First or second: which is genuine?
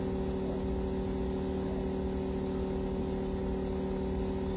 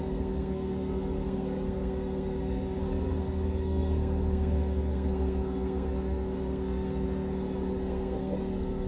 first